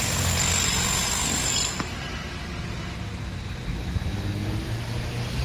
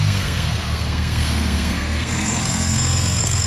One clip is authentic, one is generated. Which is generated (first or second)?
second